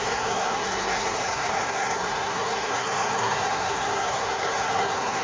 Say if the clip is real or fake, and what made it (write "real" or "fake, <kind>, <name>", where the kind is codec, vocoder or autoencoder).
fake, codec, SNAC